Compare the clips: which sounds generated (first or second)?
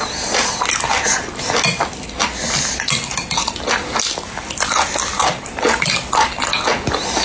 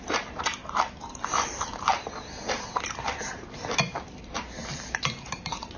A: second